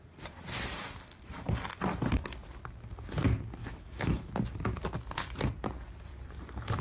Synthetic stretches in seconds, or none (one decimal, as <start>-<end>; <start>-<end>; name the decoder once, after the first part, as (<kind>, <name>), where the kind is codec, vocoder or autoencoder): 3.6-4.3 (autoencoder, DAC-VAE)